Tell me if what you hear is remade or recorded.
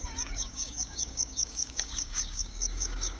remade